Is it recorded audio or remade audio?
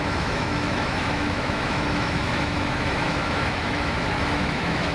remade